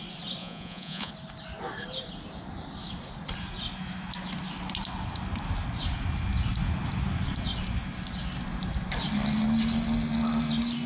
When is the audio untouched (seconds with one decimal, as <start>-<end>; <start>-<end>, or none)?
0.0-0.4; 1.1-10.9